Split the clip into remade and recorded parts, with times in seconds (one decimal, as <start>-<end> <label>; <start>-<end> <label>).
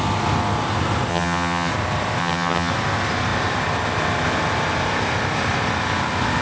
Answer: 0.0-1.1 recorded; 1.1-1.7 remade; 1.7-2.2 recorded; 2.2-2.7 remade; 2.7-6.4 recorded